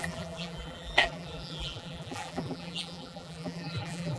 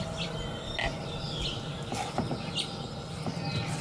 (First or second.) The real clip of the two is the second